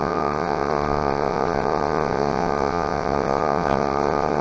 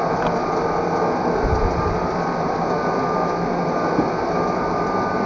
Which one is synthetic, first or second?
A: first